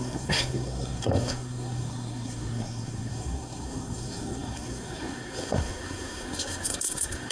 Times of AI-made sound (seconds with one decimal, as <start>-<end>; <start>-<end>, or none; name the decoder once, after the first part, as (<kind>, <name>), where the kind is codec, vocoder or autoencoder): 0.0-7.3 (codec, SNAC)